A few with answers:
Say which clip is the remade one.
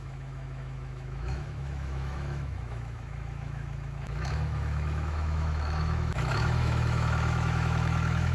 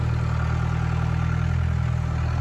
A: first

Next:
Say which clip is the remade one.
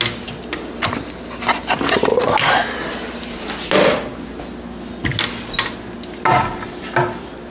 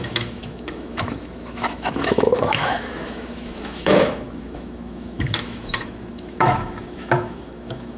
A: second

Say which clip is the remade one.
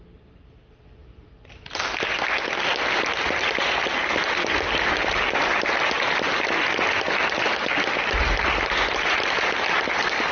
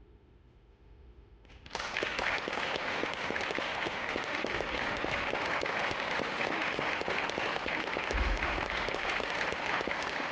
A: second